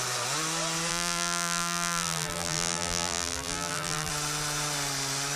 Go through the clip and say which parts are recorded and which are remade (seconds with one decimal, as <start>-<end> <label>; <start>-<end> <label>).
0.0-0.9 recorded; 0.9-4.1 remade; 4.1-5.4 recorded